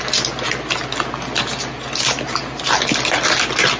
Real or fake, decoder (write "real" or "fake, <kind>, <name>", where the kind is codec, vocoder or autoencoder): real